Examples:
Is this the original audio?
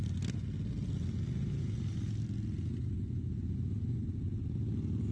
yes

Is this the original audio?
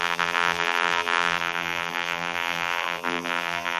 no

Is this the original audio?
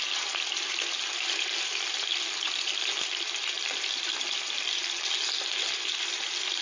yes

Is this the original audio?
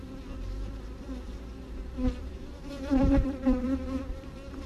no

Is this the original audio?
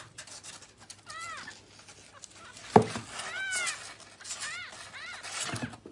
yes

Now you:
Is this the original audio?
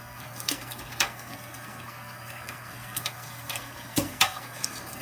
no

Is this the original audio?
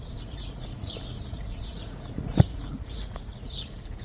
no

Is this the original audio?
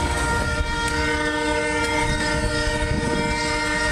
no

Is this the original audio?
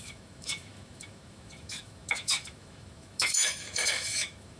no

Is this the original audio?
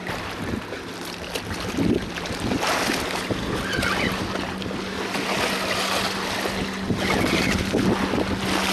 yes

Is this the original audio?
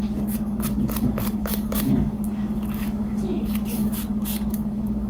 no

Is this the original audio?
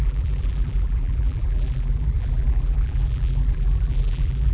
no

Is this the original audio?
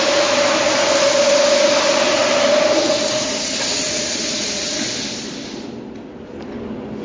yes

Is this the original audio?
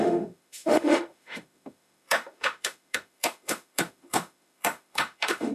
no